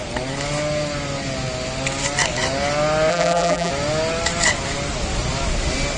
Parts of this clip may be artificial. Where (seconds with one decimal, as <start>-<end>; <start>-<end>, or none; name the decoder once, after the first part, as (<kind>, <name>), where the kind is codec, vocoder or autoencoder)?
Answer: 3.1-3.7 (vocoder, BigVGAN v2)